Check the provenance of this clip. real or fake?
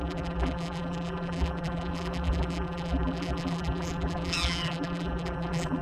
fake